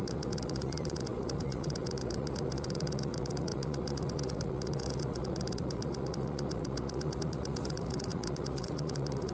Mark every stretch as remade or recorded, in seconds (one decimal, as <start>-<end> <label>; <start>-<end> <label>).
0.0-9.3 remade